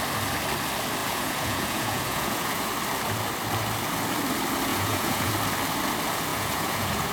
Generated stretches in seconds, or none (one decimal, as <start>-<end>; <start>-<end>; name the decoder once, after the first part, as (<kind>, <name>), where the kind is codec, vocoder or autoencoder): 1.0-2.7 (vocoder, Vocos); 4.7-5.3; 6.3-7.1

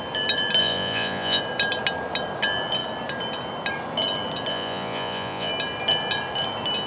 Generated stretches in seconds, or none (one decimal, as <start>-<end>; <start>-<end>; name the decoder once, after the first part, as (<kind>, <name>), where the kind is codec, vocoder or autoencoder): 0.6-1.4 (vocoder, Vocos); 4.5-5.5

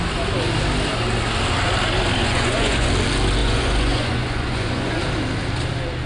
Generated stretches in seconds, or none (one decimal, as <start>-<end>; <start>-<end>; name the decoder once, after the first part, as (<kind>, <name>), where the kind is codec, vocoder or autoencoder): 2.2-2.9 (vocoder, Vocos); 3.4-5.0

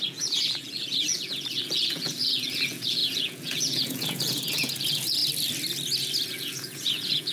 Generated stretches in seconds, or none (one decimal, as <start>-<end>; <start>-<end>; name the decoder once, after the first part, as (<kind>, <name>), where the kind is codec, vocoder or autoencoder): 0.0-5.2 (vocoder, Vocos); 6.3-7.3

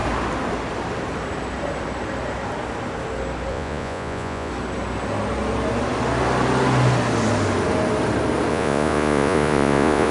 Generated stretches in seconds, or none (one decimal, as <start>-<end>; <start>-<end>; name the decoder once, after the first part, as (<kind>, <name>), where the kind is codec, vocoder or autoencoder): 3.5-4.5 (vocoder, Vocos); 8.5-10.1

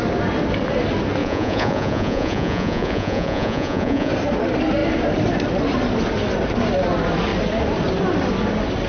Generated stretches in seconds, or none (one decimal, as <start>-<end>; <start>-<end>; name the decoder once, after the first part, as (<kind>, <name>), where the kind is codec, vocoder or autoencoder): 1.2-4.1 (vocoder, Vocos)

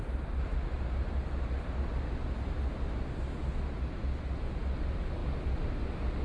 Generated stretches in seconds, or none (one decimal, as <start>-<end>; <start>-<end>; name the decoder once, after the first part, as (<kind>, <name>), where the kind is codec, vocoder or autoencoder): none